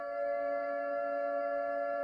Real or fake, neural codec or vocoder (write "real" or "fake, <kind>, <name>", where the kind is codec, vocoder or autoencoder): fake, codec, DAC